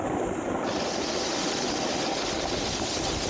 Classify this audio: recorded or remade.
recorded